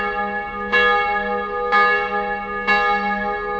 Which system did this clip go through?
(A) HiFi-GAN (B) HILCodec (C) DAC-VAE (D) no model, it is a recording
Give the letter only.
D